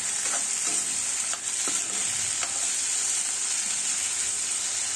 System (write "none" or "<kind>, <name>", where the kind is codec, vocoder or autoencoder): none